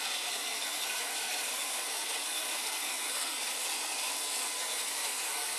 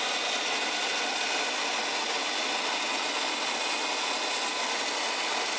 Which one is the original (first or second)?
second